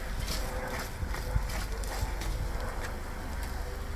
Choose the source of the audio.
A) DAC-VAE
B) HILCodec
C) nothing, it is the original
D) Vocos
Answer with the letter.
C